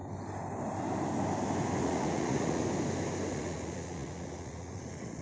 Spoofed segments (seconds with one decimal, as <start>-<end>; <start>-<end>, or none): 1.8-2.6; 3.3-5.2